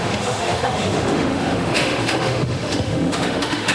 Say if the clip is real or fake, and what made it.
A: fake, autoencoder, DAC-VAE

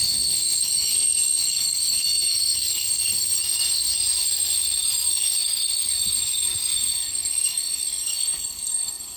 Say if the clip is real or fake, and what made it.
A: fake, codec, SNAC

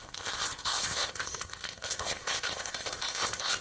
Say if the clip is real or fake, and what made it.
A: fake, codec, ZipCodec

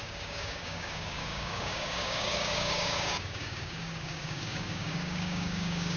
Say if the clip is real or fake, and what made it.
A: fake, codec, DAC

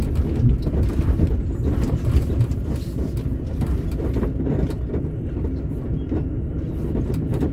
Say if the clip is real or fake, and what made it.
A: real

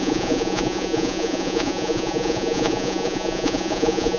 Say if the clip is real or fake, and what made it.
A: fake, vocoder, Vocos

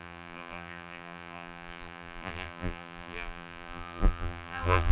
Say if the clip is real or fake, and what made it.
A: fake, vocoder, BigVGAN v2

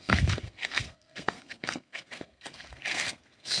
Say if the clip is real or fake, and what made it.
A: fake, codec, SNAC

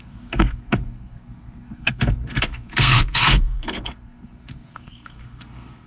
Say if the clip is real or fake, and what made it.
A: fake, codec, SNAC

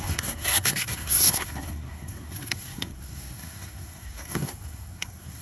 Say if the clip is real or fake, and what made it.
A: fake, codec, SNAC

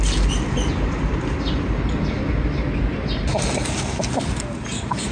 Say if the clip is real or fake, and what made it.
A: real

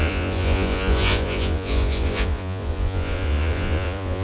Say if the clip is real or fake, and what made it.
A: fake, vocoder, Vocos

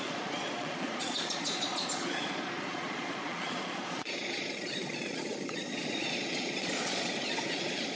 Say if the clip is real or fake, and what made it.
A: fake, vocoder, Vocos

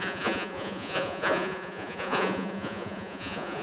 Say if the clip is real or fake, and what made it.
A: fake, vocoder, Vocos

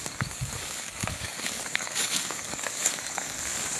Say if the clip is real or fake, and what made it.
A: fake, codec, DAC